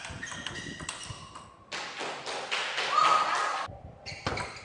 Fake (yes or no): no